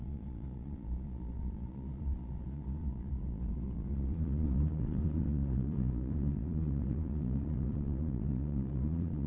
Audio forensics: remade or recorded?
remade